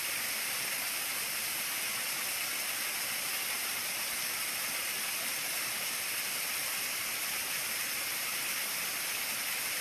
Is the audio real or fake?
real